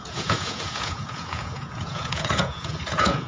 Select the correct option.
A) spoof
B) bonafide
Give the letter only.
A